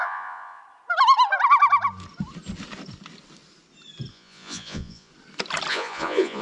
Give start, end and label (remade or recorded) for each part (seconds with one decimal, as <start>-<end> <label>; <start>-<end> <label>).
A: 0.0-0.6 remade; 0.6-4.1 recorded; 4.1-5.1 remade; 5.1-5.7 recorded; 5.7-6.4 remade